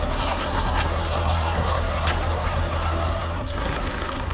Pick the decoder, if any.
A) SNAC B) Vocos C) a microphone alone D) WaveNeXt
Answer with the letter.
A